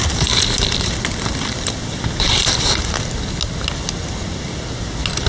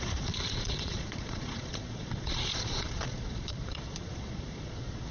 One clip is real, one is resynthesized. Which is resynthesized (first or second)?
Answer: second